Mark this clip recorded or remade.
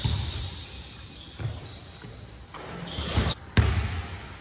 recorded